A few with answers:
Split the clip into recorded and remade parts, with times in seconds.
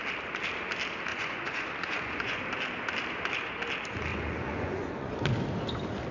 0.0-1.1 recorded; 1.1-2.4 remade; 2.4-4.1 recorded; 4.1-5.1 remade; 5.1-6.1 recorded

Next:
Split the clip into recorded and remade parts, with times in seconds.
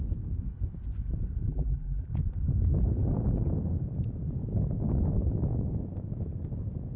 0.0-1.5 recorded; 1.5-2.1 remade; 2.1-7.0 recorded